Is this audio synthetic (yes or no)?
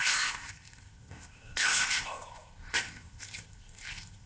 yes